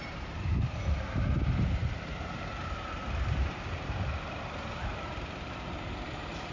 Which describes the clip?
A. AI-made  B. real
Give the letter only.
A